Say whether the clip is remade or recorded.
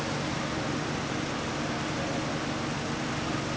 recorded